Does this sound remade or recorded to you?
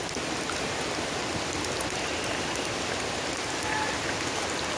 recorded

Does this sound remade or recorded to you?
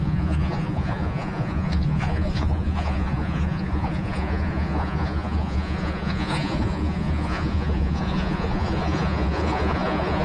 remade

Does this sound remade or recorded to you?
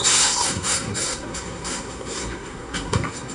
remade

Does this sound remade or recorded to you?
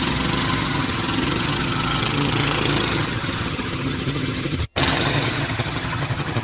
remade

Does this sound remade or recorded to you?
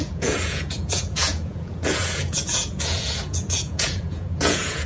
remade